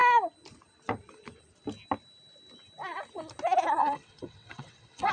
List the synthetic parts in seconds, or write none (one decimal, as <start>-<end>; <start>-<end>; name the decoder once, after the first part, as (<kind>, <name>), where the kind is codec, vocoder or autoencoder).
3.8-5.1 (vocoder, WaveNeXt)